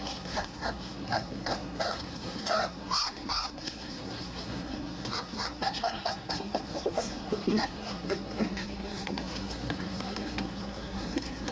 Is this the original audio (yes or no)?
no